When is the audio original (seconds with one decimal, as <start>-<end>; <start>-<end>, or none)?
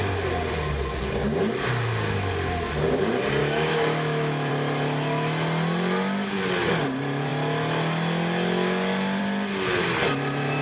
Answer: 0.0-3.4; 4.5-10.6